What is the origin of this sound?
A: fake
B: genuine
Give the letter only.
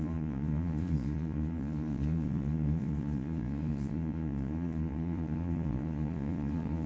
A